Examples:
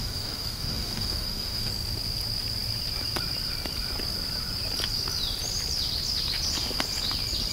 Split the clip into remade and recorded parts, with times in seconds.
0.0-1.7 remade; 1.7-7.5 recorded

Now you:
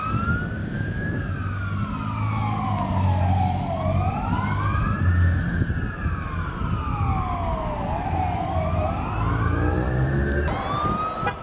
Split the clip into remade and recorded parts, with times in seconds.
0.0-0.6 recorded; 0.6-1.2 remade; 1.2-11.4 recorded